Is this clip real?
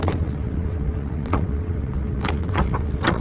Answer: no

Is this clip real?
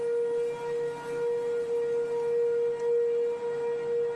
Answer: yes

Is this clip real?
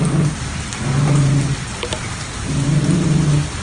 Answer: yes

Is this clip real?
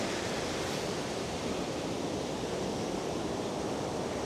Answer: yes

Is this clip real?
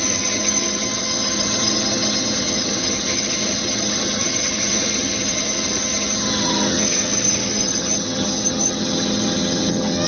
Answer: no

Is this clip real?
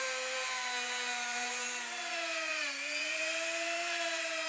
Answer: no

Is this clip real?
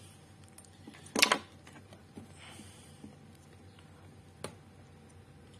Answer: yes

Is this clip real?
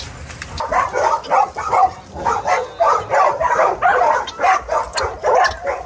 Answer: yes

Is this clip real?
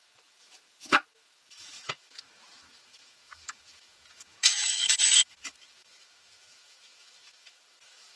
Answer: no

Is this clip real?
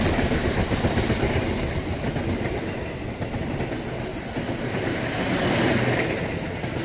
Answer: yes